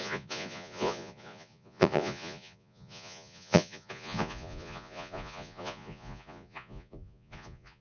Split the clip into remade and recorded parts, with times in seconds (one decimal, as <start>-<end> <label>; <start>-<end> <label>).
0.0-7.8 remade